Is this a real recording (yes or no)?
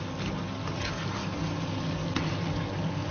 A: yes